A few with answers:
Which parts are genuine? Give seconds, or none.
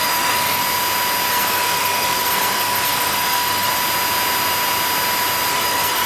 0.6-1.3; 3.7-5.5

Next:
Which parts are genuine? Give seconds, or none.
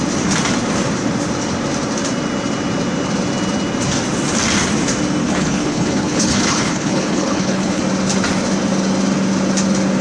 0.0-5.2; 7.8-10.0